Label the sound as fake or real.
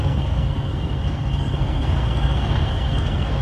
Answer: fake